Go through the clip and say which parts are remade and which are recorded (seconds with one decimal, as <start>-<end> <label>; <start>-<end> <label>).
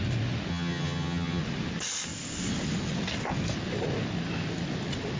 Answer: 0.0-0.5 recorded; 0.5-1.4 remade; 1.4-5.2 recorded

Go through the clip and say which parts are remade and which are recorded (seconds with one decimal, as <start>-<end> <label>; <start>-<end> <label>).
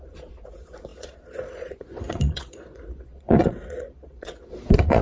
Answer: 0.0-5.0 remade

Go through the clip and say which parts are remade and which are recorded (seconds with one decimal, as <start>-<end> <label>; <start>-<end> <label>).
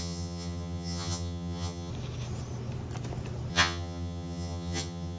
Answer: 0.0-1.9 remade; 1.9-3.5 recorded; 3.5-5.2 remade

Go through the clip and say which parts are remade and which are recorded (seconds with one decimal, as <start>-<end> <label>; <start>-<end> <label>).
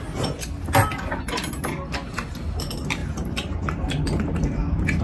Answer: 0.0-3.0 recorded; 3.0-5.0 remade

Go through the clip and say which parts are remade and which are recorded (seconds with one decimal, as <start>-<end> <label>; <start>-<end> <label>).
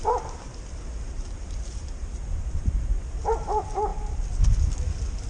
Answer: 0.0-3.2 remade; 3.2-5.3 recorded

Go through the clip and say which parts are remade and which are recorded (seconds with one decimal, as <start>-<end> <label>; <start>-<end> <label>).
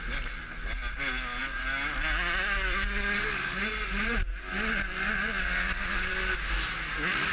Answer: 0.0-7.3 recorded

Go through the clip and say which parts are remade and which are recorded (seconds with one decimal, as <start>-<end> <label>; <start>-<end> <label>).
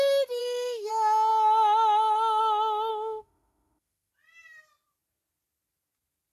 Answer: 0.0-0.4 recorded; 0.4-0.9 remade; 0.9-2.9 recorded; 2.9-4.1 remade; 4.1-6.3 recorded